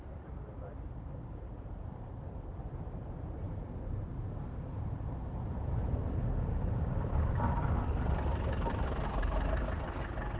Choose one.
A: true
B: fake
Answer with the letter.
A